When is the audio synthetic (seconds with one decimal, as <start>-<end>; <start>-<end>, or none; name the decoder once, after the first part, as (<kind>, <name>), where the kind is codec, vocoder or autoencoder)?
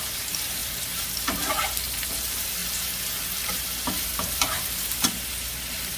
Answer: 0.0-6.0 (vocoder, BigVGAN v2)